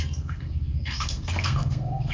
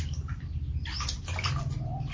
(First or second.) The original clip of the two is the second